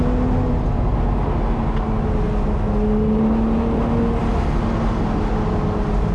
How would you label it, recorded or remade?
recorded